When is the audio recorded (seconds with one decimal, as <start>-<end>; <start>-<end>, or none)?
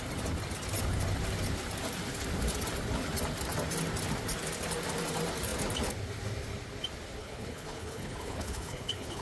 0.0-7.2